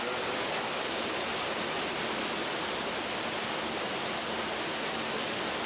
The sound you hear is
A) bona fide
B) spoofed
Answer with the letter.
A